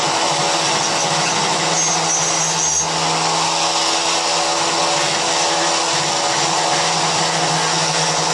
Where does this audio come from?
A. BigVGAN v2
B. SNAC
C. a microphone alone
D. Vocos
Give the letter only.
C